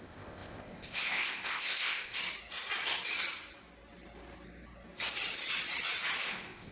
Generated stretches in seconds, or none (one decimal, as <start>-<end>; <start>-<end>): 0.0-2.2; 6.2-6.7